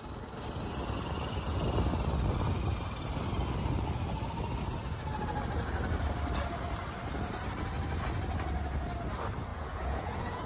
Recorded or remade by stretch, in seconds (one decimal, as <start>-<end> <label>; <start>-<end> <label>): 0.0-9.5 recorded; 9.5-10.5 remade